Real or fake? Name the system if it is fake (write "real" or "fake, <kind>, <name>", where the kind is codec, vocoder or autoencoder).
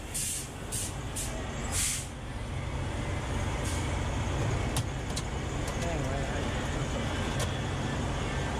real